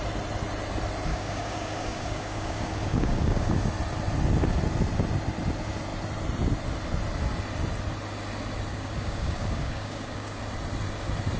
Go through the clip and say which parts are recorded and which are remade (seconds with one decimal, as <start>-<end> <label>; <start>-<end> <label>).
0.0-1.1 recorded; 1.1-3.5 remade; 3.5-8.7 recorded; 8.7-10.4 remade; 10.4-11.4 recorded